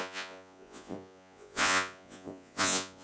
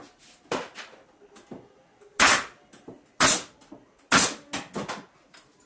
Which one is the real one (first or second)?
second